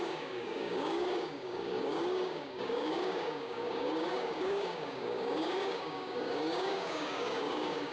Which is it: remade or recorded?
remade